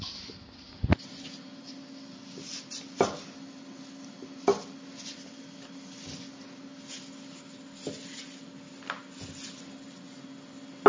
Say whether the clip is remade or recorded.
recorded